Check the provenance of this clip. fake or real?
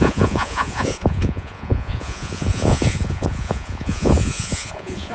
fake